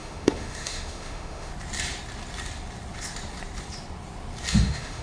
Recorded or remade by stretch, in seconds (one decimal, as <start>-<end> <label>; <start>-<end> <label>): 0.0-1.5 remade; 1.5-4.5 recorded; 4.5-5.0 remade